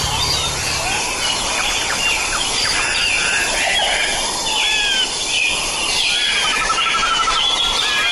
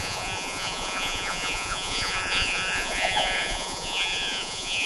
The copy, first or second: second